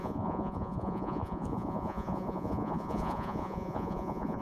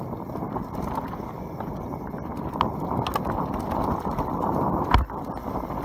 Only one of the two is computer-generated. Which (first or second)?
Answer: first